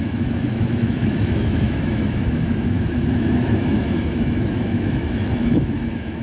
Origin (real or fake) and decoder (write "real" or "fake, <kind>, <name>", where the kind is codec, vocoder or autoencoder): fake, autoencoder, DAC-VAE